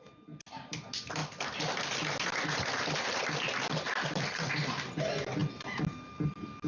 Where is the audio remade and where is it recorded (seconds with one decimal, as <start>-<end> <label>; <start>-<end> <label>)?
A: 0.0-6.7 recorded